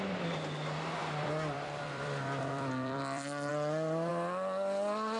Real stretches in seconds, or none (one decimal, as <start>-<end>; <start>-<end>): 0.0-1.0; 3.5-5.2